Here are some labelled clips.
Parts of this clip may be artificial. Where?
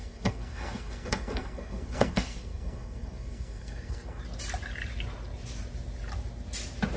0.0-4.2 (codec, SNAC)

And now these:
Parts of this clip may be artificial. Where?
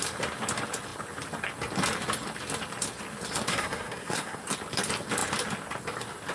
3.5-4.4 (codec, SNAC)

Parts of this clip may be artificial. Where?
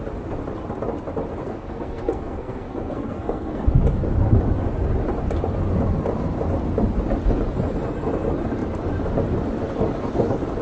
1.4-3.7 (codec, SNAC)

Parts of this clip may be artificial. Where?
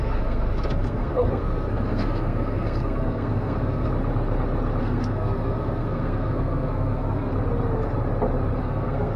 0.0-3.9 (codec, SNAC); 4.8-7.3; 8.6-9.2